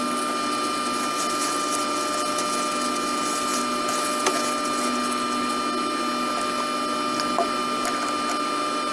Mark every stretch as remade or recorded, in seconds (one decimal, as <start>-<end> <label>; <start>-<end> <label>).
0.0-8.9 recorded